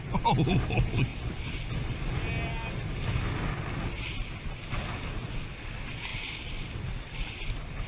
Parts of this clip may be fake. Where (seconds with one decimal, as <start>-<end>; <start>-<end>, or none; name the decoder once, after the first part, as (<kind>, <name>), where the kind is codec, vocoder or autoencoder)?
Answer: 6.1-7.3 (vocoder, BigVGAN v2)